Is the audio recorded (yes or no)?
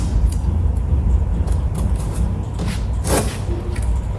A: yes